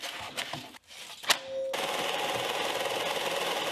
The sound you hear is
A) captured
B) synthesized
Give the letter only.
A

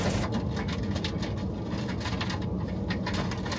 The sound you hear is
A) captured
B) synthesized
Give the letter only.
A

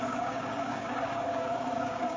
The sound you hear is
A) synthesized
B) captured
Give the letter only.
A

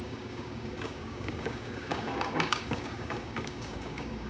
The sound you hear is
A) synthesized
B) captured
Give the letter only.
A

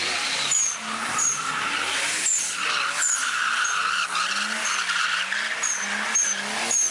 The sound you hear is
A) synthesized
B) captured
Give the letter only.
B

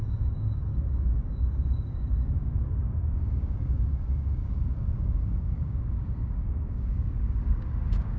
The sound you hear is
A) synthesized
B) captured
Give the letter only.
A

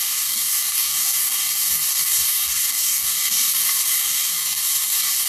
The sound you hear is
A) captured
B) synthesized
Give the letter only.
B